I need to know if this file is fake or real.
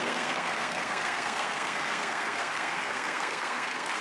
fake